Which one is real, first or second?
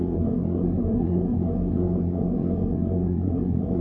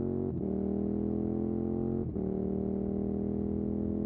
second